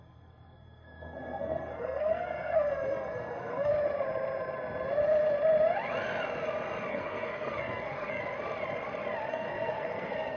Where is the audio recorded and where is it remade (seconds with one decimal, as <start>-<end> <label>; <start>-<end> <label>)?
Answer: 0.0-3.7 remade; 3.7-6.9 recorded; 6.9-8.2 remade; 8.2-9.3 recorded; 9.3-10.4 remade

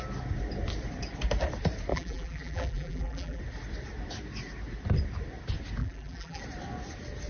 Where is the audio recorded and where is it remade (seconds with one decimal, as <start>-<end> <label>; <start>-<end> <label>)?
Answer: 0.0-1.9 recorded; 1.9-3.4 remade; 3.4-5.8 recorded; 5.8-6.4 remade; 6.4-7.3 recorded

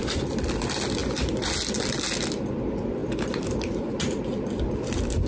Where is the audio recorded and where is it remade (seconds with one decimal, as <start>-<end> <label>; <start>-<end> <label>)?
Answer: 0.0-5.3 recorded

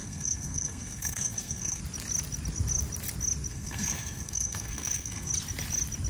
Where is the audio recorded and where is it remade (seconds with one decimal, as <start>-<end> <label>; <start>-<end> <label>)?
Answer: 0.0-1.8 remade; 1.8-3.5 recorded; 3.5-5.3 remade; 5.3-6.1 recorded

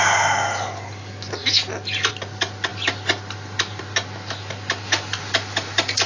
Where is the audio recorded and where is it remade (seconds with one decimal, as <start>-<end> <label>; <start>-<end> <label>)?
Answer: 0.0-6.1 recorded

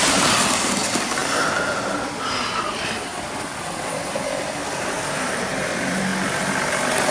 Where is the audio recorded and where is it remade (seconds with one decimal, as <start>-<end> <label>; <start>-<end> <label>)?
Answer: 0.0-1.2 remade; 1.2-2.6 recorded; 2.6-6.1 remade; 6.1-7.1 recorded

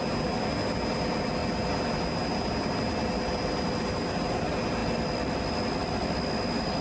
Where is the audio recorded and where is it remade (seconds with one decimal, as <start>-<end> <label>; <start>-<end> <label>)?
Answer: 0.0-4.8 recorded; 4.8-5.5 remade; 5.5-6.8 recorded

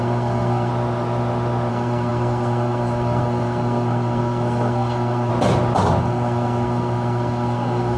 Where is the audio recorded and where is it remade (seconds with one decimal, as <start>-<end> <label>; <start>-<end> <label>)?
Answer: 0.0-0.7 remade; 0.7-1.7 recorded; 1.7-5.3 remade; 5.3-6.0 recorded; 6.0-8.0 remade